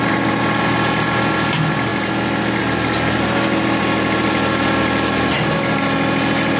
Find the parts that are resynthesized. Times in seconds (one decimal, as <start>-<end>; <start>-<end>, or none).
none